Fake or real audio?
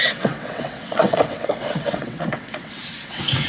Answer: fake